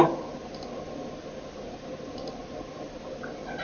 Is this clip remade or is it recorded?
recorded